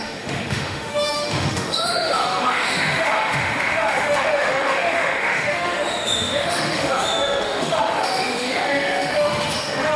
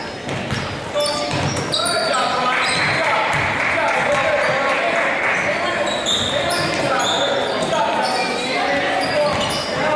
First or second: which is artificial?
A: first